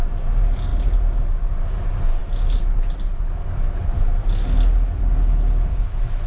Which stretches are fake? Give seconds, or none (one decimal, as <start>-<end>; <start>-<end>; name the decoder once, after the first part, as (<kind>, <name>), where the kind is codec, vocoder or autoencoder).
none